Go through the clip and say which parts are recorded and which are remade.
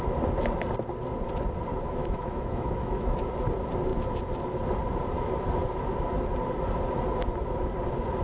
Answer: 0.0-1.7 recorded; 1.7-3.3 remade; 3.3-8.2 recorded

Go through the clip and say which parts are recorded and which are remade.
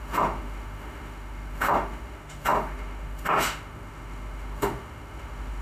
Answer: 0.0-5.6 remade